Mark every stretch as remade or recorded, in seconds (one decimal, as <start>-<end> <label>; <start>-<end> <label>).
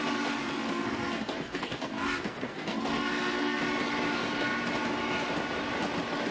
0.0-0.5 recorded; 0.5-3.6 remade; 3.6-6.3 recorded